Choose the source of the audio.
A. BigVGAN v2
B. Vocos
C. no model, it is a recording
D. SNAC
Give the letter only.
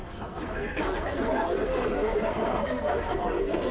D